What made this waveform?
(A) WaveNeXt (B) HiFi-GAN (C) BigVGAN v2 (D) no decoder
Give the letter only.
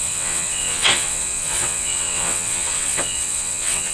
A